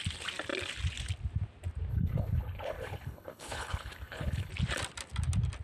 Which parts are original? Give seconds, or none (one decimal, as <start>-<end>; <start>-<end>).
0.0-1.9; 4.5-5.6